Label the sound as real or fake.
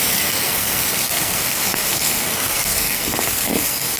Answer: fake